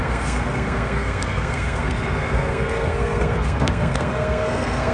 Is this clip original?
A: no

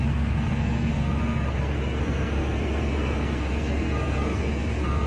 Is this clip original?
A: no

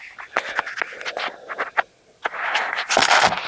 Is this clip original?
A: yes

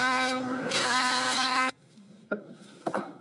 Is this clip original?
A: no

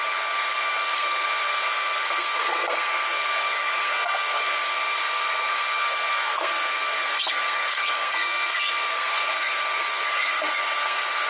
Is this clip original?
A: no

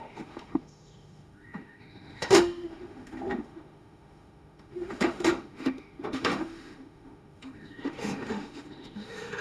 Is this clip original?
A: no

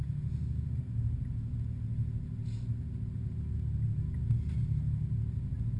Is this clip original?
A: yes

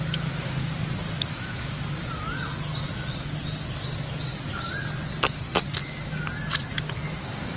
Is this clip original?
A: yes